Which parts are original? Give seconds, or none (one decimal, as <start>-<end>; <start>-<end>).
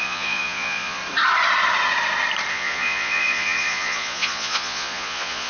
1.0-2.5